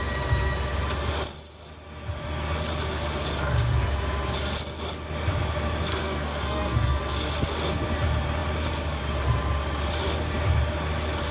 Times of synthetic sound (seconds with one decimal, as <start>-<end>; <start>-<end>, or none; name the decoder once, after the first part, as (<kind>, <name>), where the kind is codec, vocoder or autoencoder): 5.9-7.0 (codec, SNAC)